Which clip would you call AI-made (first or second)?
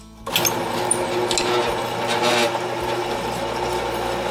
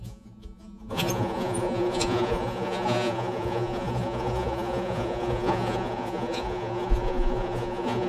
second